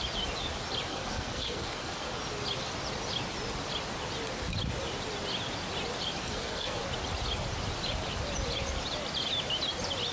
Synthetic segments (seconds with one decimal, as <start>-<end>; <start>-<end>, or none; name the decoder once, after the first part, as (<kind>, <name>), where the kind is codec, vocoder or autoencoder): 0.9-2.2 (codec, SNAC); 6.2-6.8